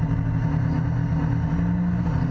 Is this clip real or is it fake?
real